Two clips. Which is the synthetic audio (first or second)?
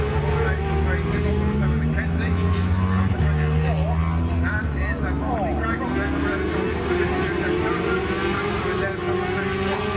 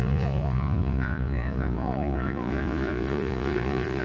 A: second